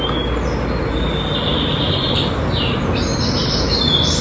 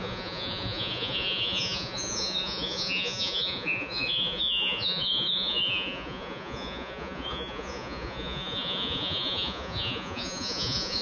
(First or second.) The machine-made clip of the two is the second